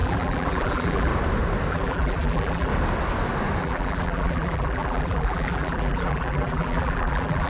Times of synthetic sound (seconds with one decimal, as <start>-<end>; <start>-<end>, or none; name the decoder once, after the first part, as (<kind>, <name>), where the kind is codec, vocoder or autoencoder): 0.0-1.1 (vocoder, BigVGAN v2); 1.7-2.7; 3.6-7.5